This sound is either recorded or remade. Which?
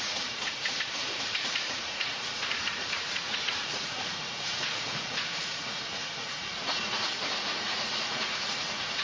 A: remade